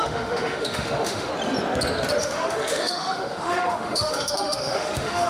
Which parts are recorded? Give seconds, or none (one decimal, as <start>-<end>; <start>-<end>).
1.3-2.2